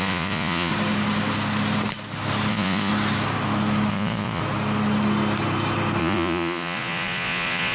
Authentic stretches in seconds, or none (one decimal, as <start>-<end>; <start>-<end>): 0.7-2.5; 2.9-3.9; 4.4-6.0